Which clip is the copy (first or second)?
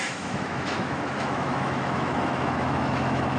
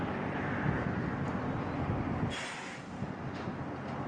first